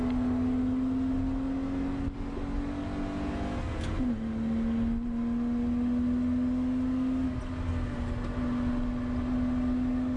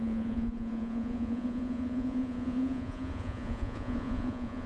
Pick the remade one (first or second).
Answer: second